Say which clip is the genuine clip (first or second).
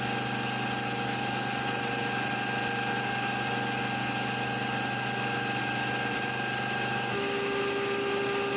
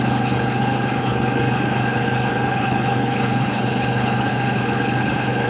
first